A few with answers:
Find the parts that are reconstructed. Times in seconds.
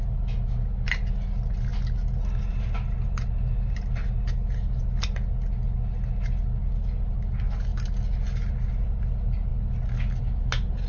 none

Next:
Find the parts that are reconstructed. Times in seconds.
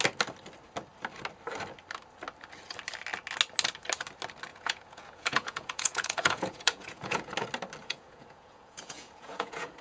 4.5-7.3 (vocoder, Vocos); 7.8-9.8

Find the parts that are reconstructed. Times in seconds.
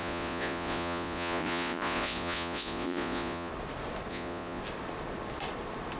0.0-3.5 (vocoder, Vocos); 4.1-4.6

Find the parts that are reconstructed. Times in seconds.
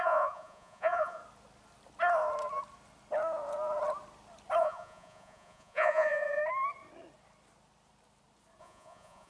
0.0-1.2 (vocoder, Vocos); 4.6-6.4; 8.6-9.3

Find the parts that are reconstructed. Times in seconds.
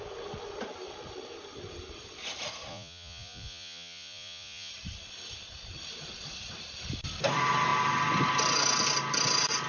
2.7-4.7 (vocoder, Vocos)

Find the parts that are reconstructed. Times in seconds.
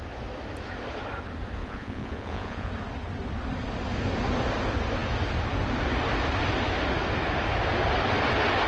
1.6-2.7 (vocoder, Vocos)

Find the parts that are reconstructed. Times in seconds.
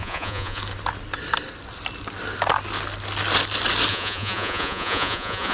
0.0-0.6 (vocoder, Vocos); 3.9-5.5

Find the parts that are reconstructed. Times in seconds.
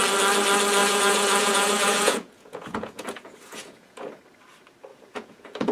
0.8-4.2 (vocoder, Vocos); 4.9-5.7